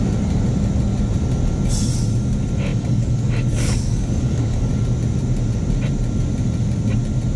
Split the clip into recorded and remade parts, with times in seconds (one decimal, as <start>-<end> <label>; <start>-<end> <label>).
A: 0.0-2.7 recorded; 2.7-4.7 remade; 4.7-7.4 recorded